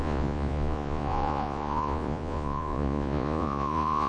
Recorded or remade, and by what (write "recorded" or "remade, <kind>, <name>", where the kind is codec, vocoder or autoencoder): remade, vocoder, Vocos